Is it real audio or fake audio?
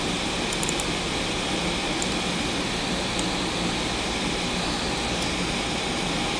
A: real